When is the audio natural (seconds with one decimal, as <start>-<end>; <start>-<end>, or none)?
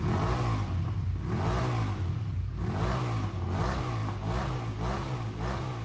0.0-5.8